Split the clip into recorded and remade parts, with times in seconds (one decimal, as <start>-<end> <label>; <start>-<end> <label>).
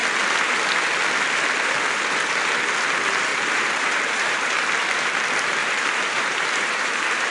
0.0-3.3 recorded; 3.3-4.6 remade; 4.6-5.6 recorded; 5.6-7.3 remade